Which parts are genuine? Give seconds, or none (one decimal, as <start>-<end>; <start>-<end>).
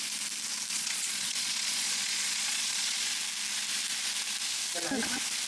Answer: 0.0-0.7; 3.1-5.5